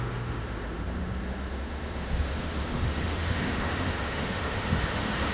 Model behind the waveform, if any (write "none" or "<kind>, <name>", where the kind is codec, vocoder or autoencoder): autoencoder, DAC-VAE